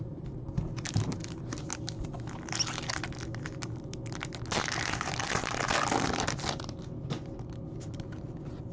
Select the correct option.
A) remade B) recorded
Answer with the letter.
B